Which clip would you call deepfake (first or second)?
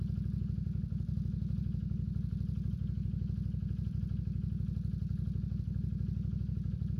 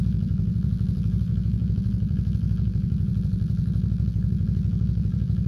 second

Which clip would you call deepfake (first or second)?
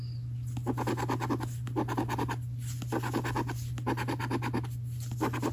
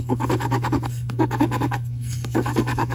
second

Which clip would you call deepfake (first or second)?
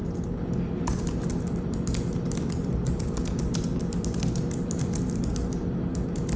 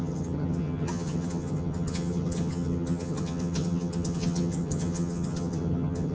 second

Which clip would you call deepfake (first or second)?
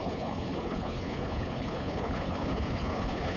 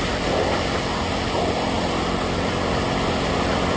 first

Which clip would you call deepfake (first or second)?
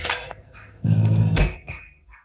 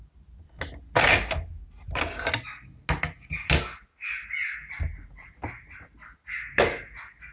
first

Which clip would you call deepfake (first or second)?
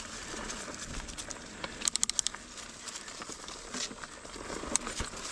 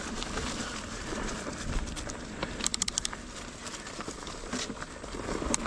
second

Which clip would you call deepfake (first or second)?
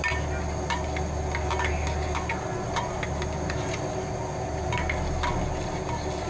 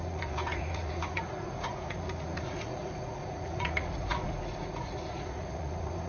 second